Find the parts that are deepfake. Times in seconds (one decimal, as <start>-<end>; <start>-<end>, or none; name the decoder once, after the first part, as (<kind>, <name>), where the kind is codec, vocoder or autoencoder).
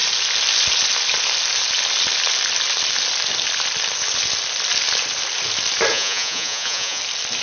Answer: 5.9-7.0 (vocoder, Vocos)